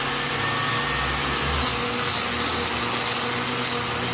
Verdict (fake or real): real